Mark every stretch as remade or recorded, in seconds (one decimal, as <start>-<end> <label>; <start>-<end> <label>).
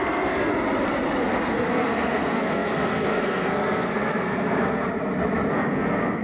0.0-0.5 remade; 0.5-1.2 recorded; 1.2-4.8 remade; 4.8-5.5 recorded; 5.5-6.2 remade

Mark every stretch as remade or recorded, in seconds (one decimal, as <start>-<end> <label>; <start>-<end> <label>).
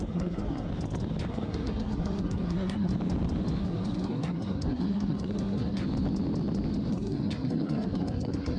0.0-0.7 remade; 0.7-1.3 recorded; 1.3-2.9 remade; 2.9-3.6 recorded; 3.6-5.8 remade; 5.8-6.9 recorded; 6.9-8.6 remade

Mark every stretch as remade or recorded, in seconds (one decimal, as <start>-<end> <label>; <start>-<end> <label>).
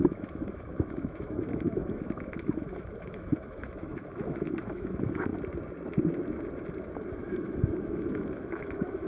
0.0-5.3 remade; 5.3-7.1 recorded; 7.1-9.1 remade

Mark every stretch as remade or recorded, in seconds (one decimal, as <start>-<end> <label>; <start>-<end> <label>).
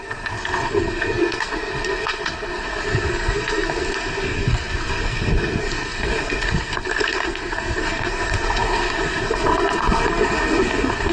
0.0-11.1 remade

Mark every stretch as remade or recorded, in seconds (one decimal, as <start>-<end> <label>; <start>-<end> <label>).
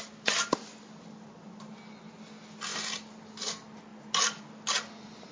0.0-5.3 recorded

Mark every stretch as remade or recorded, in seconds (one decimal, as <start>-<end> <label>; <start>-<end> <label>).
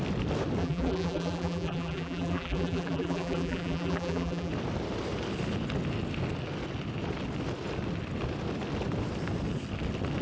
0.0-0.6 recorded; 0.6-4.5 remade; 4.5-10.2 recorded